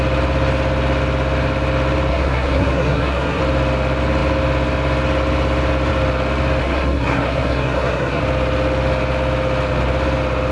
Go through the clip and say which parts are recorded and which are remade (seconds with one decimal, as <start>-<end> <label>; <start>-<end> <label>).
0.0-2.1 recorded; 2.1-3.4 remade; 3.4-6.6 recorded; 6.6-8.2 remade; 8.2-10.5 recorded